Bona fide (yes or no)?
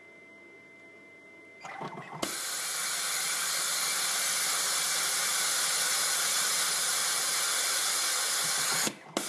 yes